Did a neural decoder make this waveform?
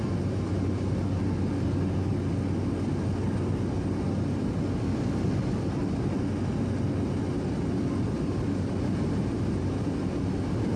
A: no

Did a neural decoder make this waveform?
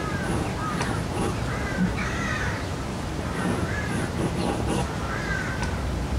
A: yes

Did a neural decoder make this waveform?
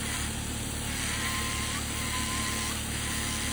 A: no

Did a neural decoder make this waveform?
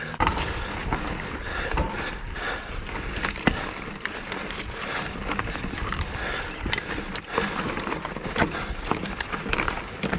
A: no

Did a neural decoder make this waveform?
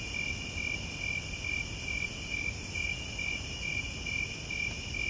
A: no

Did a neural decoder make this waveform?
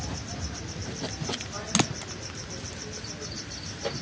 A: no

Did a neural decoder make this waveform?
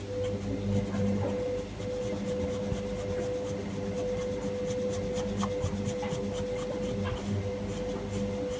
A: no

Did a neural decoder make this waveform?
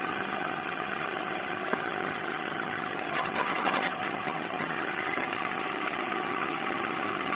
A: yes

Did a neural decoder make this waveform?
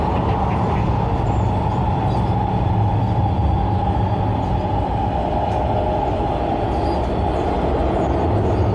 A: no